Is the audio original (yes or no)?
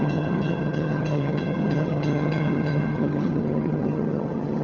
no